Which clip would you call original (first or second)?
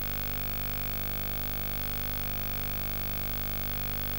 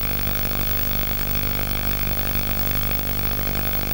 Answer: first